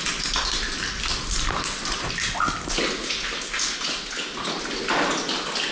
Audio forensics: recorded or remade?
recorded